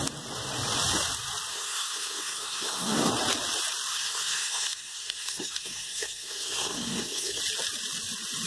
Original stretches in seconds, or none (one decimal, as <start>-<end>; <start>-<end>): 0.0-1.5; 3.1-3.9; 7.4-8.5